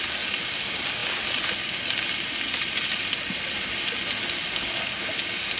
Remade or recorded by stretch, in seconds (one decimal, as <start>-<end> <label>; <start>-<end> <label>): 0.0-5.6 recorded